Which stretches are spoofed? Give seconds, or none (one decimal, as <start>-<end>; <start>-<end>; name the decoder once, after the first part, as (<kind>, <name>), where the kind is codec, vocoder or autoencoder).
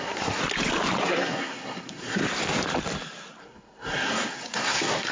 0.0-0.4 (codec, SNAC); 1.0-2.2; 3.4-5.1